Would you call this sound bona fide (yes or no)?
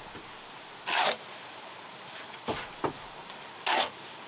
yes